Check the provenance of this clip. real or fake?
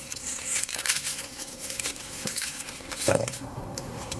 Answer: fake